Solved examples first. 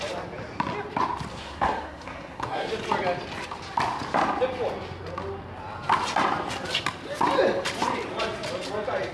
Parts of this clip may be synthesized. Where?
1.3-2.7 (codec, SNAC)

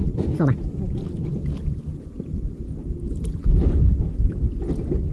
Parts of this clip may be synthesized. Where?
none

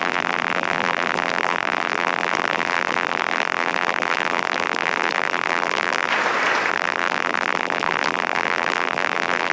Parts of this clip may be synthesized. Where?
0.0-6.1 (vocoder, BigVGAN v2); 6.7-9.5

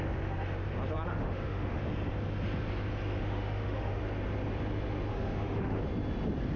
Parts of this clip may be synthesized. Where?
1.1-1.8 (autoencoder, DAC-VAE); 3.2-4.0; 5.1-5.8

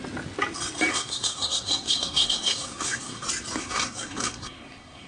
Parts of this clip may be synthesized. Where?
0.9-3.2 (codec, SNAC); 3.6-5.1